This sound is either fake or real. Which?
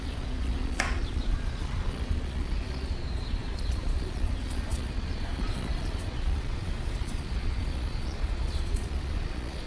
fake